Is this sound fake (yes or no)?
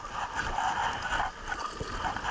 no